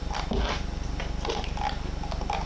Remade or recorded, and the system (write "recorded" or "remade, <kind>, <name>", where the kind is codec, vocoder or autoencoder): recorded